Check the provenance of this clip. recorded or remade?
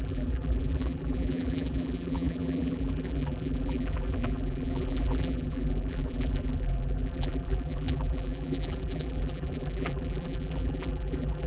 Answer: remade